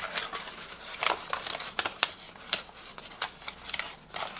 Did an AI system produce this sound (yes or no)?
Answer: no